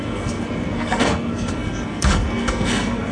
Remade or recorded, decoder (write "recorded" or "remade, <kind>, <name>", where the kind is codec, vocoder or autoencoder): remade, codec, SNAC